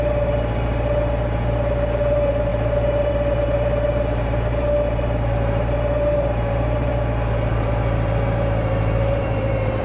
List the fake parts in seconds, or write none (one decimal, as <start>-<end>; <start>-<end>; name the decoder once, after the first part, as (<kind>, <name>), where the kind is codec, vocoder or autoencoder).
0.0-6.9 (vocoder, BigVGAN v2); 7.5-9.8